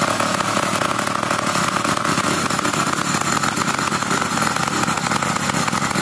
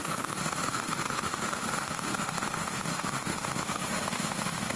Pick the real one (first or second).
first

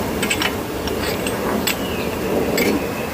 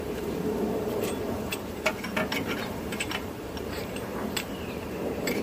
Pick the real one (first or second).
first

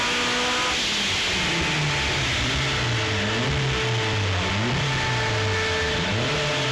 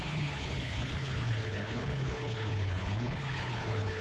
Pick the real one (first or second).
first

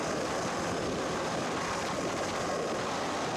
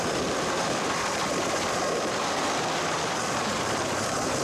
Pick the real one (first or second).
first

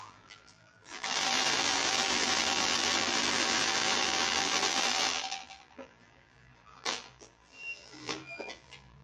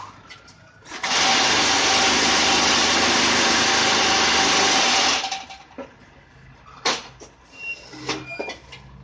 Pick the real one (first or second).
second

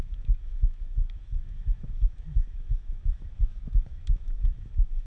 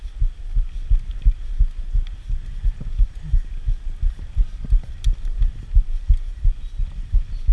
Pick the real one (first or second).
second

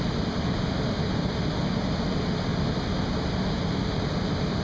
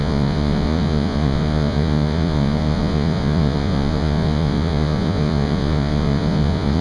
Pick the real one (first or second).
first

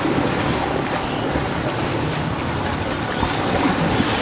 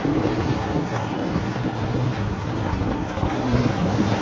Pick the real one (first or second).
first